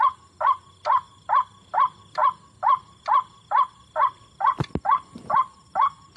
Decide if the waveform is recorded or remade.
recorded